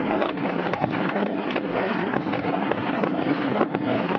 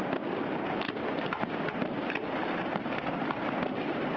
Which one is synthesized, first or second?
first